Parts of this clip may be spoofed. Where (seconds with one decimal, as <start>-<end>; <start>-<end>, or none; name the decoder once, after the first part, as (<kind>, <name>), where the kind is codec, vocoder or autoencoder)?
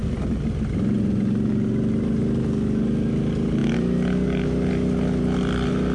none